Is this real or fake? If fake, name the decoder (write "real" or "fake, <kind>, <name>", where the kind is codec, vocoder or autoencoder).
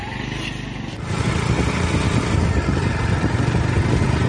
real